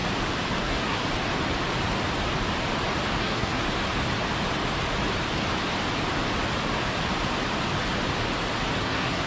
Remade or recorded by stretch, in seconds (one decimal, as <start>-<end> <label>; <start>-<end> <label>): 0.0-0.6 recorded; 0.6-1.0 remade; 1.0-3.2 recorded; 3.2-3.6 remade; 3.6-8.8 recorded; 8.8-9.3 remade